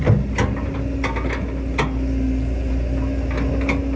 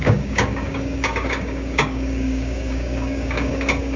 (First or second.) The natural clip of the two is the first